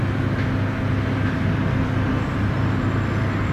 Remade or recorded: recorded